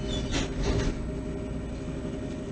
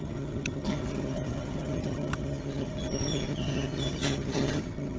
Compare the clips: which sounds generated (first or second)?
second